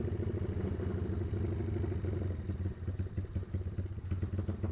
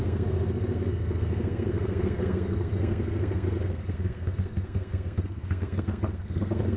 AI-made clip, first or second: second